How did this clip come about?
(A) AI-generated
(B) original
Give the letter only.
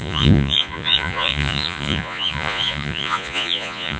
A